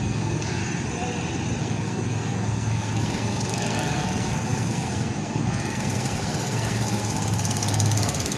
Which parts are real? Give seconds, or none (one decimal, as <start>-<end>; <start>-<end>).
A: 0.6-1.6